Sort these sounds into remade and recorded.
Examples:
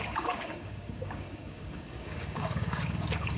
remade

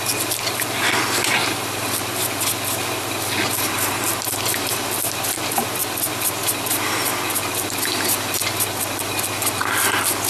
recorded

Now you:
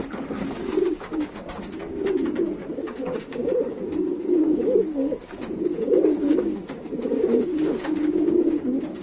remade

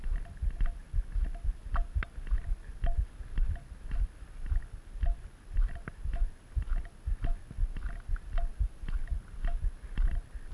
recorded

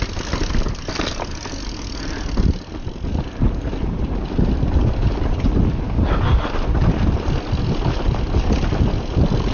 recorded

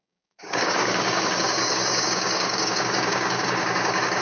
remade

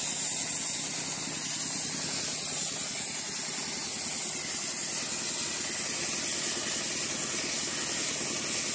recorded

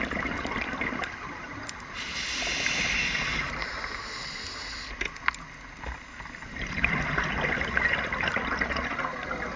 recorded